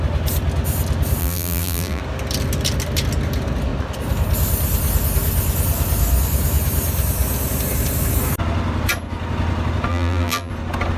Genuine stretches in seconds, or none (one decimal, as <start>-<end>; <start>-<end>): 0.0-1.2; 2.0-9.9; 10.5-11.0